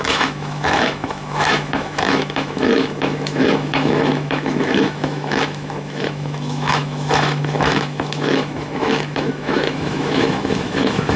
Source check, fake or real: fake